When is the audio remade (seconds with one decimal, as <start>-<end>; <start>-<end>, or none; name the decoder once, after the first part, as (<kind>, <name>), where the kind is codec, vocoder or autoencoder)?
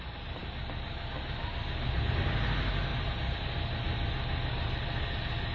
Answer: none